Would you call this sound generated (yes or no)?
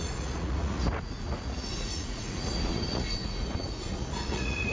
yes